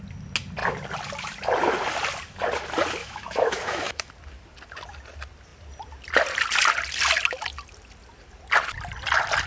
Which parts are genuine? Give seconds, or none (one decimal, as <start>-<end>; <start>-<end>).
0.0-3.0; 4.1-9.5